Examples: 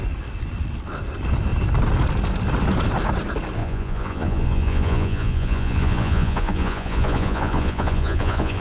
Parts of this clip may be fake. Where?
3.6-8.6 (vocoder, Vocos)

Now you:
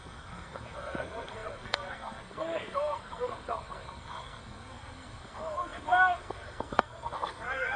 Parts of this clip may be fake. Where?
0.0-7.8 (codec, SNAC)

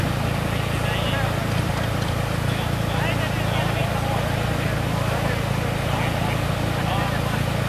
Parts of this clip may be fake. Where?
none

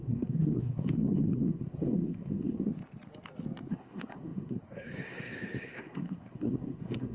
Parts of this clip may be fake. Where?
0.0-2.7 (codec, SNAC); 3.7-7.1

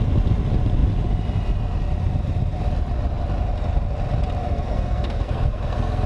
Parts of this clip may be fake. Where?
4.4-6.1 (codec, SNAC)

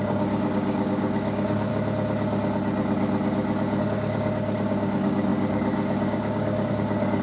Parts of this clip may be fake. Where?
0.0-1.7 (codec, DAC); 3.8-7.2

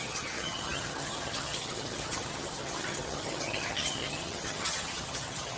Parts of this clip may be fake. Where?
0.0-5.6 (vocoder, HiFi-GAN)